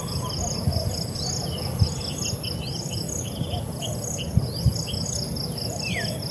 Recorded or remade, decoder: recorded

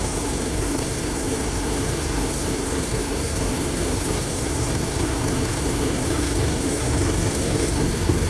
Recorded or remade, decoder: remade, codec, SNAC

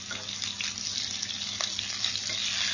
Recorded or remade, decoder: recorded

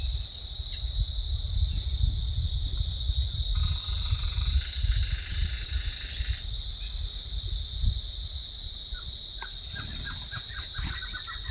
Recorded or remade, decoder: recorded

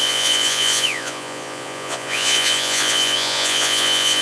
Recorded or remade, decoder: remade, vocoder, Vocos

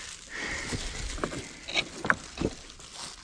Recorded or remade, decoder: recorded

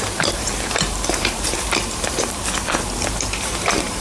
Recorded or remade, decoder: remade, vocoder, BigVGAN v2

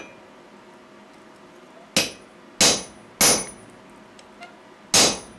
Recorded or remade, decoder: recorded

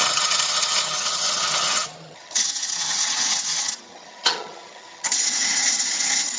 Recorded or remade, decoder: remade, vocoder, HiFi-GAN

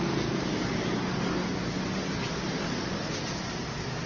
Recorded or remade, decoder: recorded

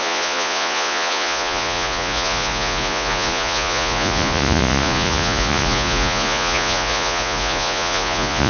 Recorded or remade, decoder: remade, vocoder, Vocos